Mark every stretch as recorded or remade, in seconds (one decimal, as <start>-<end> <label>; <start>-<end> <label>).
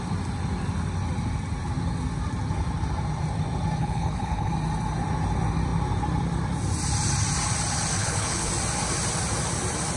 0.0-3.8 recorded; 3.8-4.5 remade; 4.5-8.0 recorded; 8.0-8.5 remade; 8.5-10.0 recorded